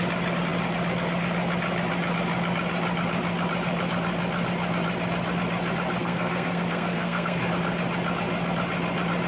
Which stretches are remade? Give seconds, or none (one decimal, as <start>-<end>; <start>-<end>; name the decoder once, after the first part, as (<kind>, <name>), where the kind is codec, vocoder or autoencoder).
6.0-7.4 (codec, SNAC)